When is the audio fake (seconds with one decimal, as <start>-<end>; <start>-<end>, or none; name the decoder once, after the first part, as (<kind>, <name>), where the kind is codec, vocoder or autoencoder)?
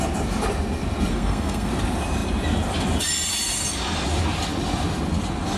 1.1-1.7 (codec, SNAC)